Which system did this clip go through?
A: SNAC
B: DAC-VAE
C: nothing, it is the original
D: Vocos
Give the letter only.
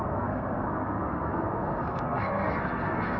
A